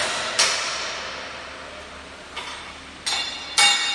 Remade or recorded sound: recorded